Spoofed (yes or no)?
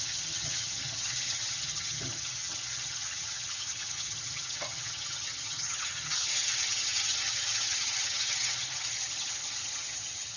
yes